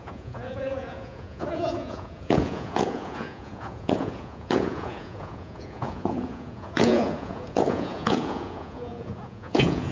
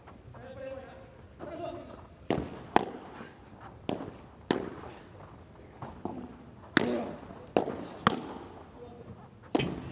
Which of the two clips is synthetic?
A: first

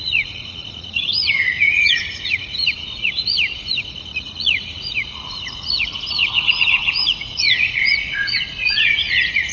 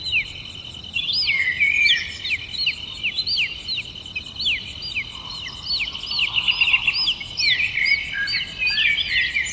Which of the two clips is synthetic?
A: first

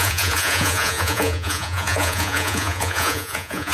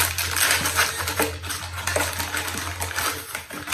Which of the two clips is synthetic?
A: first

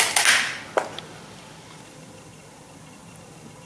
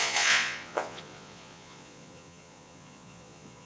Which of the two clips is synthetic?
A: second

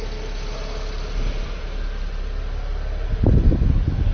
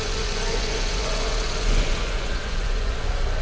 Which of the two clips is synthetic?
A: second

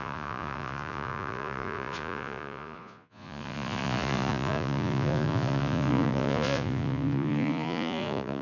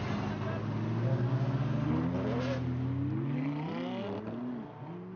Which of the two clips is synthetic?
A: first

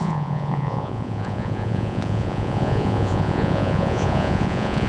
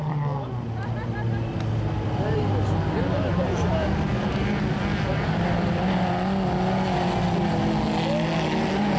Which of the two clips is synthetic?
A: first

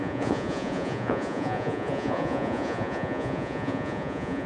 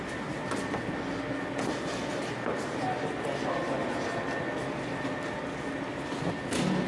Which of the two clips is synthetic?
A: first